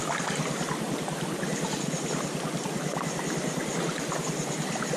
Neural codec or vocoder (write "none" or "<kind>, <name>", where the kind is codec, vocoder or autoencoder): none